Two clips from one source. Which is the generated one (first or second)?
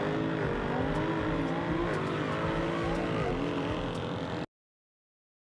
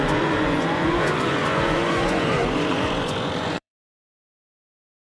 second